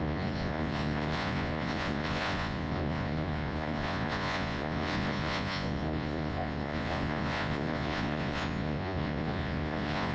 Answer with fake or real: fake